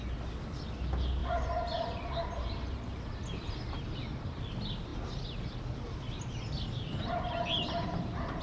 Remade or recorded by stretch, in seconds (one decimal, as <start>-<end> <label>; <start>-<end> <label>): 0.0-1.2 recorded; 1.2-3.6 remade; 3.6-8.4 recorded